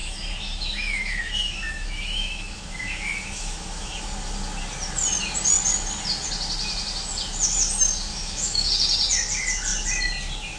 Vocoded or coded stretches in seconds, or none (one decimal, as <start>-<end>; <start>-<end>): 0.0-4.0; 8.1-8.7